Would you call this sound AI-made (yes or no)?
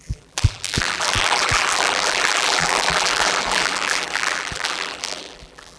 yes